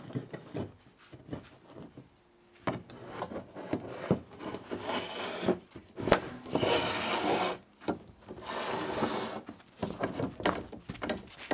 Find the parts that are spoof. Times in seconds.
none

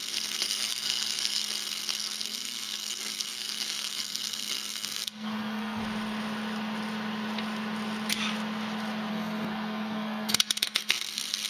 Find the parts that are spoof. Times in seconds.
0.0-5.8; 9.1-11.5

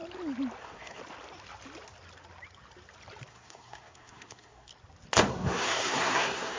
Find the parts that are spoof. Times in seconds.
0.6-1.0; 3.3-4.7; 5.3-6.6

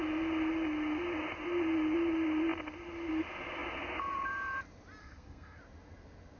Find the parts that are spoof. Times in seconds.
5.0-5.6

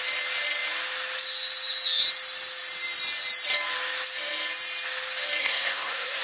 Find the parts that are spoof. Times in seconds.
5.4-6.2

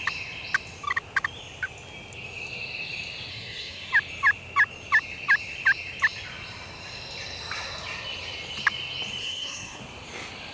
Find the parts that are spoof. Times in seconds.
3.3-3.9; 9.2-9.8

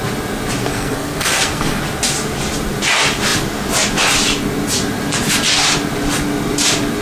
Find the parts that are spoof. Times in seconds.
0.6-1.8